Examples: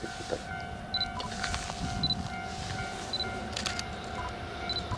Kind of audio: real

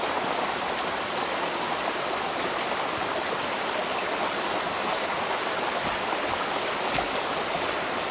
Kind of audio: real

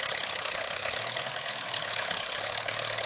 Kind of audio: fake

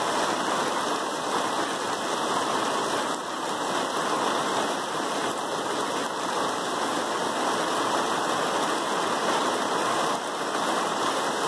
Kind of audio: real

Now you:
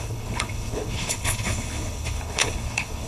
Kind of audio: fake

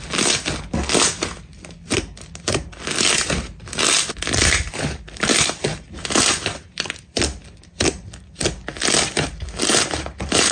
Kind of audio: real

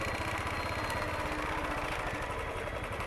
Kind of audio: real